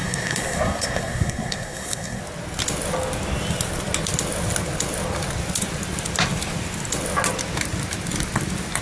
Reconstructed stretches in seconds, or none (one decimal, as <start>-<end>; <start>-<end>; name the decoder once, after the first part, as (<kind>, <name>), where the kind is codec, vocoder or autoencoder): 0.0-2.2 (codec, SNAC)